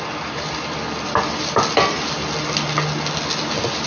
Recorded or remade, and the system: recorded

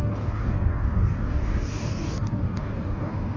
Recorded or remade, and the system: remade, codec, DAC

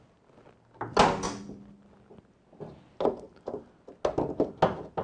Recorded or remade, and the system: recorded